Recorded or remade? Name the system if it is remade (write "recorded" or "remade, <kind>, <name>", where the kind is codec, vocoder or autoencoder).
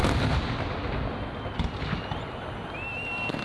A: recorded